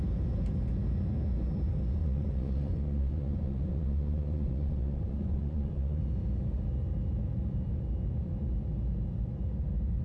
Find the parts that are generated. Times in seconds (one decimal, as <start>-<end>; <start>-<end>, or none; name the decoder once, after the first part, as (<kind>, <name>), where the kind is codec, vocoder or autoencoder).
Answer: 2.0-6.0 (vocoder, Vocos)